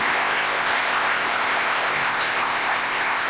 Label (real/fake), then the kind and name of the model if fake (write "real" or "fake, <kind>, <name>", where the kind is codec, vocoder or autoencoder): fake, codec, ZipCodec